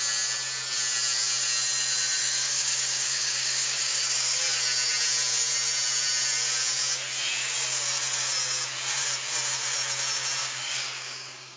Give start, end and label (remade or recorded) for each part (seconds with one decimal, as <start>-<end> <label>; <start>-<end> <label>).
0.0-2.2 recorded; 2.2-4.4 remade; 4.4-10.4 recorded; 10.4-11.6 remade